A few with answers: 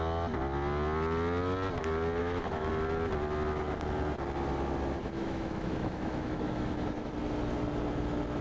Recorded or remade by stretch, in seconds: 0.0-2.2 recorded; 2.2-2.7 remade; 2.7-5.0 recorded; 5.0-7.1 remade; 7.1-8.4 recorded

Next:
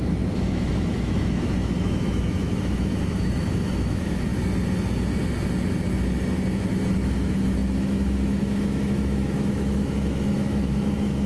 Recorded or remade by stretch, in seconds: 0.0-4.3 remade; 4.3-7.0 recorded; 7.0-11.3 remade

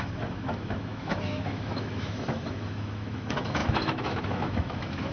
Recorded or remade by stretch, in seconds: 0.0-5.1 remade